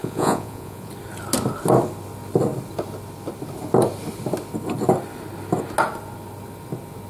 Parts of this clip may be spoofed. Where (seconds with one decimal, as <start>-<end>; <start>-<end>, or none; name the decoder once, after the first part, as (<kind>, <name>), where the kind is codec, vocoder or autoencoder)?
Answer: 0.0-0.9 (vocoder, Vocos)